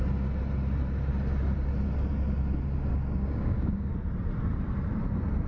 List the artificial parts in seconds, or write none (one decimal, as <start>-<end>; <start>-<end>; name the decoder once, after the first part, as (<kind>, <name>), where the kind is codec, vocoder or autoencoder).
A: 2.9-3.9 (codec, DAC)